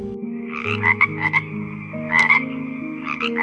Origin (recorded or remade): remade